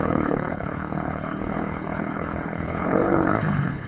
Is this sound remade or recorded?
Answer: remade